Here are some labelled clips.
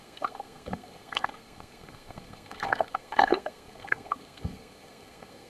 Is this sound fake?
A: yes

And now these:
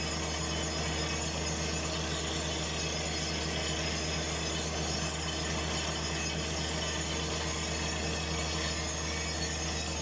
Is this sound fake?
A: no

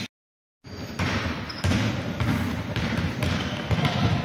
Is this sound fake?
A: no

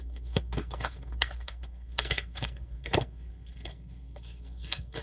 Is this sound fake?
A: yes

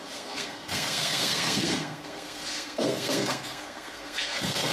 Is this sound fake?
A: yes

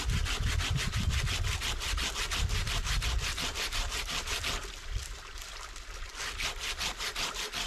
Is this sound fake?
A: no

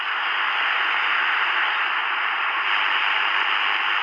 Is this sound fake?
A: no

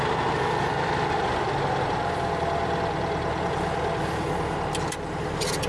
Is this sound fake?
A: no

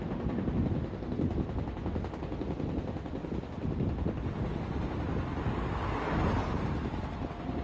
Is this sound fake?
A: no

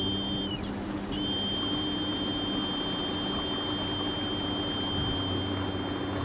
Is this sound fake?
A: no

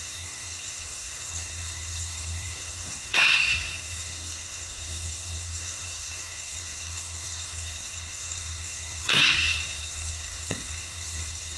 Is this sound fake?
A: yes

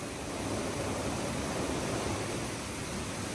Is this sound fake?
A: no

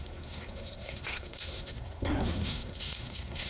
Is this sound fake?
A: yes